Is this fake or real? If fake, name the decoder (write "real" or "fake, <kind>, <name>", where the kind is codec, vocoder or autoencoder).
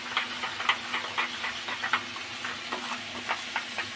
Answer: real